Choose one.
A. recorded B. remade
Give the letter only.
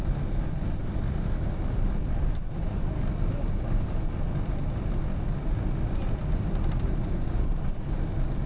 A